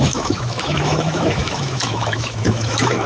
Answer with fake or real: fake